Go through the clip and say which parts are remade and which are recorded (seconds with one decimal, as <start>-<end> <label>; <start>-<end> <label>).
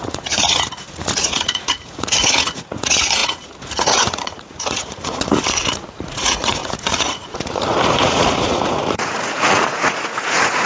0.0-10.7 remade